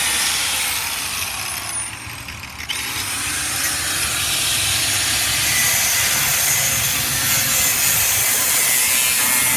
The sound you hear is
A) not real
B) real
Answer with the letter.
B